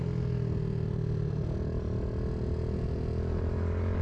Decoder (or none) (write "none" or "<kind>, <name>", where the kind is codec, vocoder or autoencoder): none